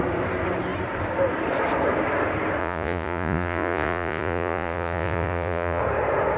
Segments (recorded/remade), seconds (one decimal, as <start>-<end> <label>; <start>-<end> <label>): 0.0-2.6 recorded; 2.6-5.8 remade; 5.8-6.4 recorded